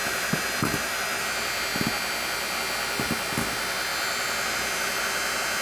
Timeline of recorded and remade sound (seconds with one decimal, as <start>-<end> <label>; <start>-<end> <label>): 0.0-5.6 recorded